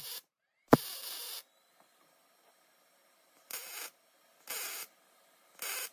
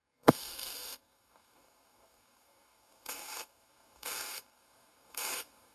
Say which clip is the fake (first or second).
second